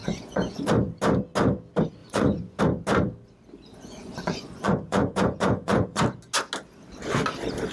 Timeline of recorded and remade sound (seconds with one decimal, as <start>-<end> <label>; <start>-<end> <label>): 0.0-0.7 remade; 0.7-2.0 recorded; 2.0-2.6 remade; 2.6-3.7 recorded; 3.7-6.0 remade; 6.0-7.7 recorded